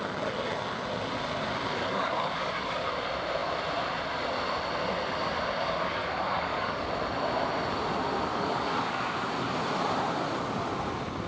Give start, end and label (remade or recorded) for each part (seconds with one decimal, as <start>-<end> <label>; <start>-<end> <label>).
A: 0.0-1.7 recorded; 1.7-2.9 remade; 2.9-6.0 recorded; 6.0-6.9 remade; 6.9-8.3 recorded; 8.3-9.0 remade; 9.0-11.3 recorded